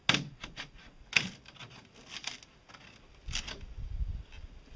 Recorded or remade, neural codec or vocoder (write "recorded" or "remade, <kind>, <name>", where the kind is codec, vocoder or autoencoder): recorded